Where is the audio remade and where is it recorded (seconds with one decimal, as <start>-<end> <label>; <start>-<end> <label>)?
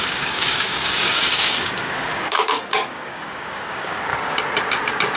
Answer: 0.0-4.1 remade; 4.1-5.2 recorded